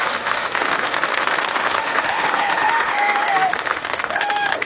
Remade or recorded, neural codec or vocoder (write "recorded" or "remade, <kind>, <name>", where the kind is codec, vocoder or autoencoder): remade, autoencoder, DAC-VAE